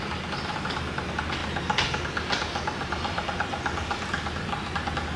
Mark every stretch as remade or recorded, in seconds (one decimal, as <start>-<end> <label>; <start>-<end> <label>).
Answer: 0.0-5.2 recorded